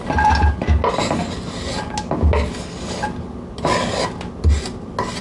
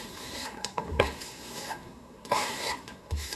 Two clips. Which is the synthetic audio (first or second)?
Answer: second